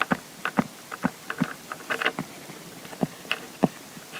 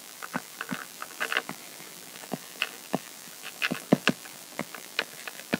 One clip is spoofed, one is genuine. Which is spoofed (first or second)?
second